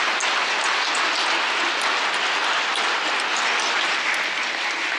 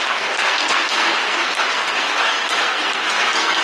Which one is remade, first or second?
second